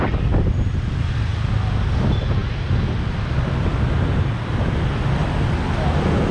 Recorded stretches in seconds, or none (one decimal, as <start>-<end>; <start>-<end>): 0.0-6.3